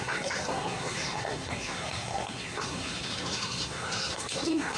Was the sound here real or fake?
fake